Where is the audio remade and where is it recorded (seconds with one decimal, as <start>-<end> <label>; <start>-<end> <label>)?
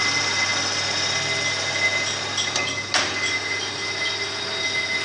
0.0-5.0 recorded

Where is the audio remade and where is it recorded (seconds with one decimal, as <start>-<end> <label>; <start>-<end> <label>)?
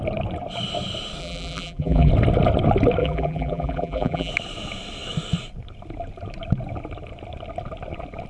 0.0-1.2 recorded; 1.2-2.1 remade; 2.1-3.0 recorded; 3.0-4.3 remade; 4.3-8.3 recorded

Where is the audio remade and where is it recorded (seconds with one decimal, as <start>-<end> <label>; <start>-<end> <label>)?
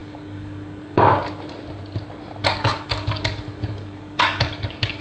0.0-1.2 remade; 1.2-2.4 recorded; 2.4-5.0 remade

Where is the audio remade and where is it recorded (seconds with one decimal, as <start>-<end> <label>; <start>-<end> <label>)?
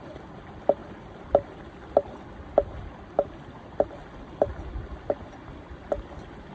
0.0-6.5 recorded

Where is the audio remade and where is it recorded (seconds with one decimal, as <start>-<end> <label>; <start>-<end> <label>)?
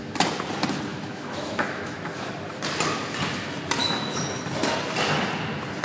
0.0-0.9 recorded; 0.9-2.3 remade; 2.3-3.8 recorded; 3.8-4.4 remade; 4.4-5.8 recorded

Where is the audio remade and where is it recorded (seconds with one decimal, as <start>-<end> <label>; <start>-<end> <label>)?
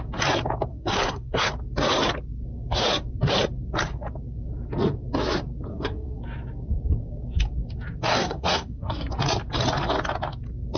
0.0-0.7 recorded; 0.7-1.5 remade; 1.5-5.7 recorded; 5.7-6.2 remade; 6.2-8.1 recorded; 8.1-9.1 remade; 9.1-10.8 recorded